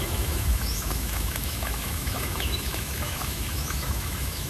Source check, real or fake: fake